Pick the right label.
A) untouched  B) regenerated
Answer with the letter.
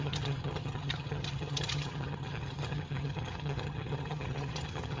B